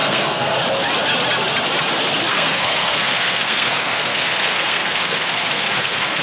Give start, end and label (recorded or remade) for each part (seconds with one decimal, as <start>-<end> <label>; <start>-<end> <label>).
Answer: 0.0-0.6 remade; 0.6-2.3 recorded; 2.3-6.2 remade